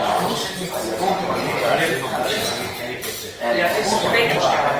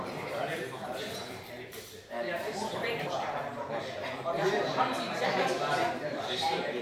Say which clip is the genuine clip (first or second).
first